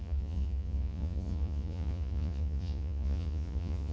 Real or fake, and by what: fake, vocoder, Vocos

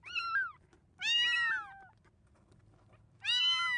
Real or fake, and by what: real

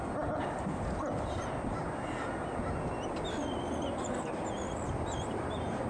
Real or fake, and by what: real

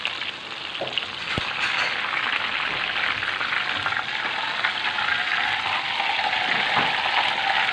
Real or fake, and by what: real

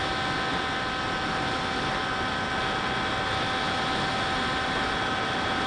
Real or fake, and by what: real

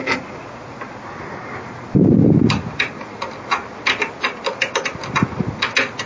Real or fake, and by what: real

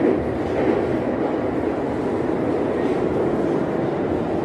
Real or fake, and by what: real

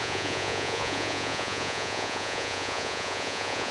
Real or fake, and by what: fake, vocoder, Vocos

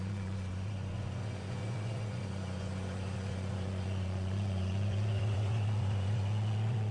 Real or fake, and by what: fake, vocoder, Vocos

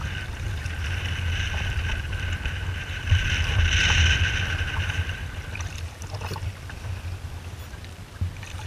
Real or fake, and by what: real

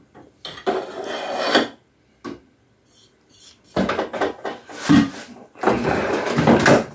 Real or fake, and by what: real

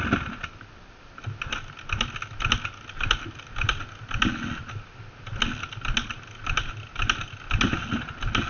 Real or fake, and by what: real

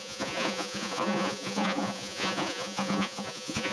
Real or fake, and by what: fake, vocoder, Vocos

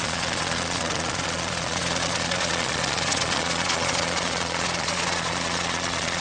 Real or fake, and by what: fake, vocoder, Vocos